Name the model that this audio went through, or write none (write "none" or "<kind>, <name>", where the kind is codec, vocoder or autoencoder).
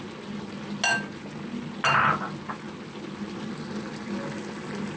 none